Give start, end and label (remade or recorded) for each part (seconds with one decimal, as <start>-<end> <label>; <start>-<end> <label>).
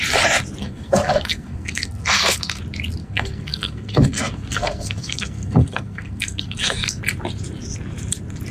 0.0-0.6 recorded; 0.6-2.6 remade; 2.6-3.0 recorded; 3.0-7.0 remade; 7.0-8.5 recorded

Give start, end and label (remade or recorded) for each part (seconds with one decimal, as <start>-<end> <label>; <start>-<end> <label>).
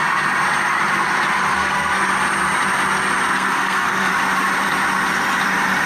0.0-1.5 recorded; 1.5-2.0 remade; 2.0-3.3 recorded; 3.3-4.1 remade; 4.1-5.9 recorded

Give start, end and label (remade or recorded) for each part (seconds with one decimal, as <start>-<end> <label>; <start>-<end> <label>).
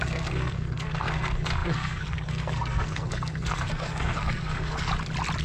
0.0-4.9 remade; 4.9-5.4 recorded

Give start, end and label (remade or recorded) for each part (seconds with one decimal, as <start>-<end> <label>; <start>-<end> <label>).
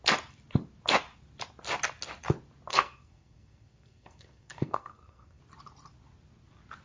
0.0-2.7 recorded; 2.7-5.4 remade; 5.4-6.8 recorded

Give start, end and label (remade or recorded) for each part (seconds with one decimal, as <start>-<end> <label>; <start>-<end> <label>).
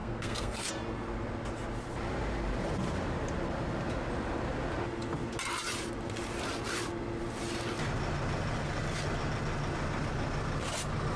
0.0-0.7 remade; 0.7-11.2 recorded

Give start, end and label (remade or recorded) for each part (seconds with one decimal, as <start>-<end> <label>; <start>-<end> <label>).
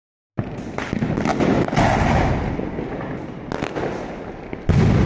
0.0-5.1 recorded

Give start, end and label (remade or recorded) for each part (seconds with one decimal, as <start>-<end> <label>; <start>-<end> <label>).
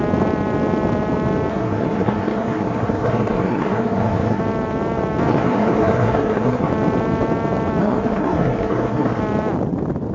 0.0-1.5 recorded; 1.5-4.4 remade; 4.4-5.3 recorded; 5.3-6.7 remade; 6.7-7.8 recorded; 7.8-9.2 remade; 9.2-10.1 recorded